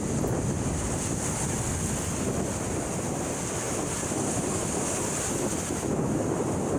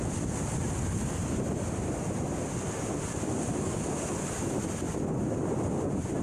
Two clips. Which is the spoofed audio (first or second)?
second